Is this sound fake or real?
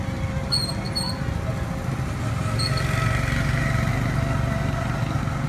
real